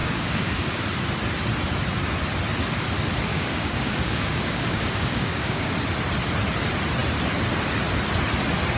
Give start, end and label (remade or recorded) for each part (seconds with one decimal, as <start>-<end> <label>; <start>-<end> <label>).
0.0-0.8 remade; 0.8-3.3 recorded; 3.3-5.7 remade; 5.7-8.8 recorded